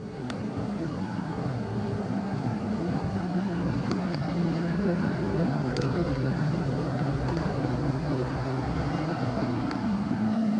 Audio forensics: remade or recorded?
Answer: remade